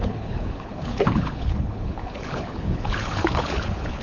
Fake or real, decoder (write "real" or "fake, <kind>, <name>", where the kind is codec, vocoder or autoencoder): fake, codec, HILCodec